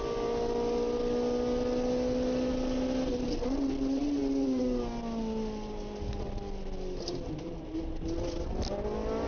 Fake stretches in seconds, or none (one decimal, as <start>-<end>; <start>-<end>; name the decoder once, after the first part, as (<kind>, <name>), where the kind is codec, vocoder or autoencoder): none